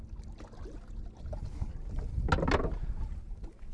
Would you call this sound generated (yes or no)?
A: no